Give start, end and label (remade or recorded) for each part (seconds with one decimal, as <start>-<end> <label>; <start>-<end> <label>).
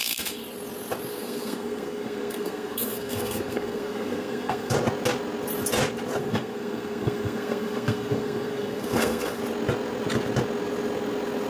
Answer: 0.0-0.4 remade; 0.4-1.1 recorded; 1.1-4.7 remade; 4.7-6.2 recorded; 6.2-9.4 remade; 9.4-11.5 recorded